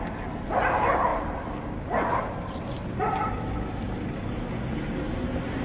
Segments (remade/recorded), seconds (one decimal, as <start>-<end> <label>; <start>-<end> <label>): 0.0-5.6 recorded